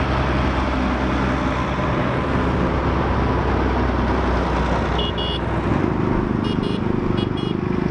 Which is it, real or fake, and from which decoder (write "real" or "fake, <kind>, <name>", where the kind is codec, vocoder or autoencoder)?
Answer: real